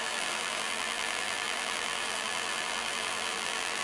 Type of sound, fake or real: fake